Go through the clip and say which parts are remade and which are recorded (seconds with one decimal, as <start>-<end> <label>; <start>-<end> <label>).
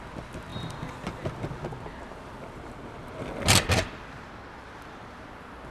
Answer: 0.0-5.7 recorded